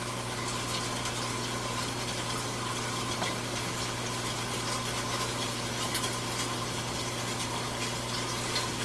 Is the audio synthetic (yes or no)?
no